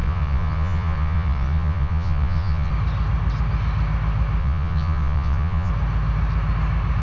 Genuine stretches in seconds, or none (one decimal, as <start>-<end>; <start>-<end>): 2.7-4.4; 5.7-7.0